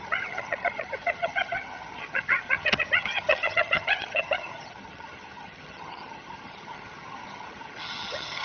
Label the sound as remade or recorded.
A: remade